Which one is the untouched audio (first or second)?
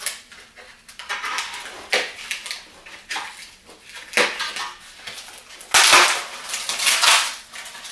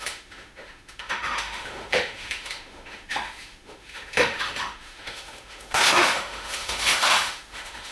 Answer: first